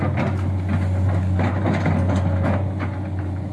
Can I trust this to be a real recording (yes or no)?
yes